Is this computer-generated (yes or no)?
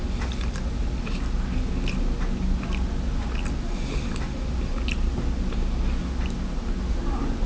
no